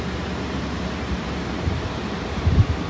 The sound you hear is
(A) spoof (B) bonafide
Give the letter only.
A